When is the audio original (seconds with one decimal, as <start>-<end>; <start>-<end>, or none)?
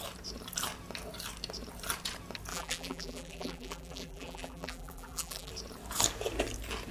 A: 0.0-2.5; 5.5-6.9